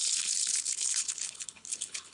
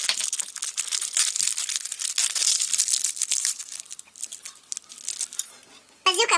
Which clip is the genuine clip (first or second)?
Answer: second